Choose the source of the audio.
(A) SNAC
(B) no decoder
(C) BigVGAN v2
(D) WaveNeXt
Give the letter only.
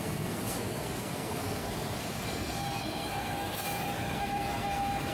A